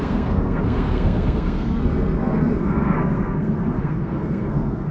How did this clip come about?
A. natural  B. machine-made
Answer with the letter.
B